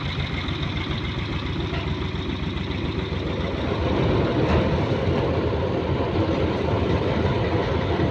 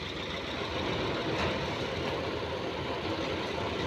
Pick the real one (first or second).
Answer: second